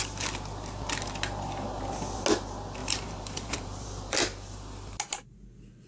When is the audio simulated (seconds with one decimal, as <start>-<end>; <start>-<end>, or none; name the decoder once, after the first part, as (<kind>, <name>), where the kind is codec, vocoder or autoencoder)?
2.8-5.0 (vocoder, BigVGAN v2)